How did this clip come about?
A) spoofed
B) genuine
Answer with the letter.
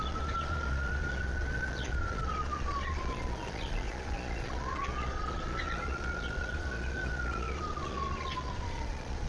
A